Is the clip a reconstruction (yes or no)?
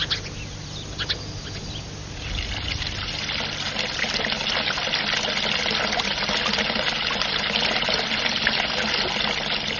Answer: no